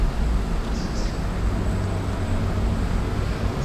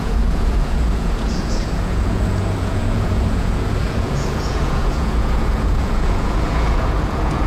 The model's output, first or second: second